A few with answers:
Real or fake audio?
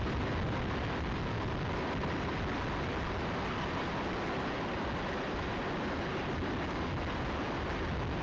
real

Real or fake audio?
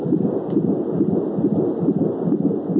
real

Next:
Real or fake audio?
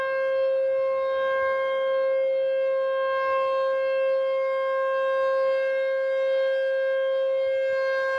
real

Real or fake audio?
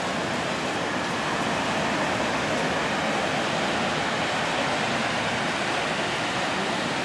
fake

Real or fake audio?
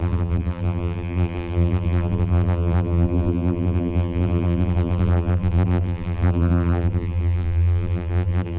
fake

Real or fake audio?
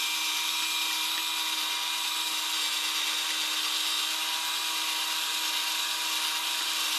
real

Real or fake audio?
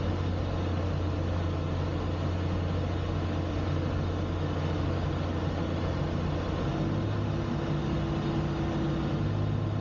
real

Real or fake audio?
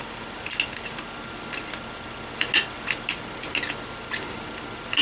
real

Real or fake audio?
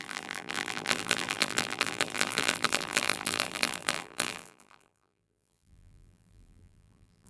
fake